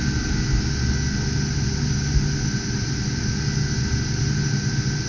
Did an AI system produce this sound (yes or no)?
no